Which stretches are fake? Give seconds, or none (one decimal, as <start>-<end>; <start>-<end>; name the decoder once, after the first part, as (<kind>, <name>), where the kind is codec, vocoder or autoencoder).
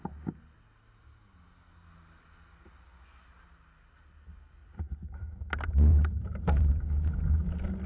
4.6-5.3 (vocoder, BigVGAN v2); 5.9-6.7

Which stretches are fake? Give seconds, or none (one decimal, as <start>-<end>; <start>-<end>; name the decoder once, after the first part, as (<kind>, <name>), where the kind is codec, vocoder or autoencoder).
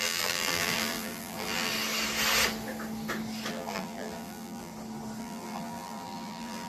0.0-1.7 (vocoder, BigVGAN v2); 3.5-4.7; 5.2-6.7